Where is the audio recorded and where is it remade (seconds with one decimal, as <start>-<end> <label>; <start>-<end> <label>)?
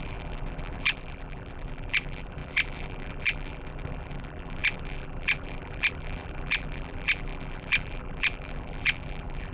0.0-9.5 remade